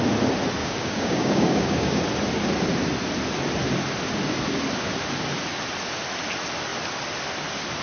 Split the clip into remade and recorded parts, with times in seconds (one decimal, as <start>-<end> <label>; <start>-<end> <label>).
0.0-0.6 recorded; 0.6-2.0 remade; 2.0-7.8 recorded